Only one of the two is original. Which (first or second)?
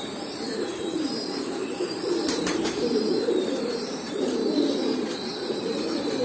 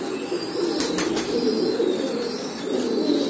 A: second